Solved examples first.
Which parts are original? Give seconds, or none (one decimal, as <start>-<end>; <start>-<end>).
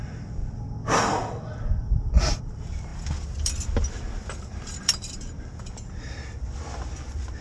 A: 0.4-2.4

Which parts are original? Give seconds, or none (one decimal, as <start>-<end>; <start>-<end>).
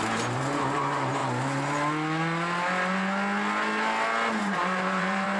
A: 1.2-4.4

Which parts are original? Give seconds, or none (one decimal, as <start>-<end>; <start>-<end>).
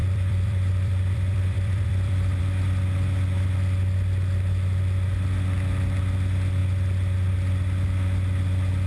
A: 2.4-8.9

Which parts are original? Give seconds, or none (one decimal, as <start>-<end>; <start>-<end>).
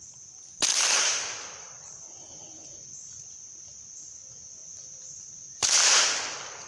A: 0.0-0.7; 2.3-4.7; 6.0-6.7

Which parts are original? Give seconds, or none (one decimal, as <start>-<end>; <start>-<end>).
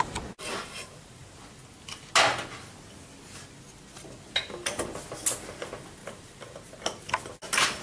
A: 0.0-0.6; 1.2-7.8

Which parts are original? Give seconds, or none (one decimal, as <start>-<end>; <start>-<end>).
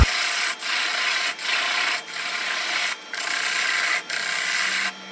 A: 0.0-5.1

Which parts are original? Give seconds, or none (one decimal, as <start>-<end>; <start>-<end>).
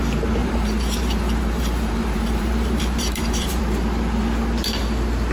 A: 0.0-0.4; 3.6-5.3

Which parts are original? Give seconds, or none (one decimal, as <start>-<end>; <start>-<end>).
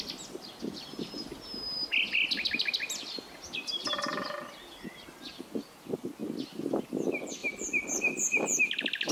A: 0.0-7.4; 8.6-9.1